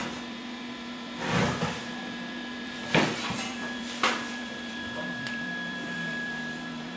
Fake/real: fake